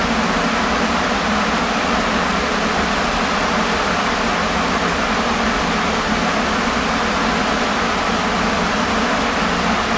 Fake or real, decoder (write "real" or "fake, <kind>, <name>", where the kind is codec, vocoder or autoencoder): real